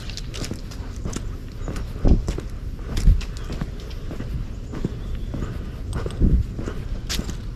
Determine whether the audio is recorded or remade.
recorded